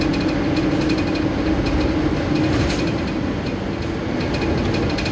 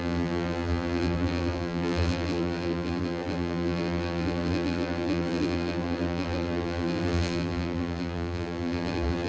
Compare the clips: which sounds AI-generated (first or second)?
second